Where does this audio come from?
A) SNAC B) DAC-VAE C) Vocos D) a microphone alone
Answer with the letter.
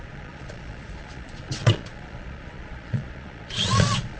C